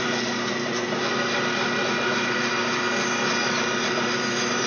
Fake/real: real